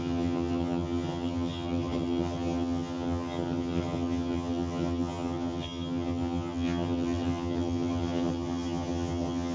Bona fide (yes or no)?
no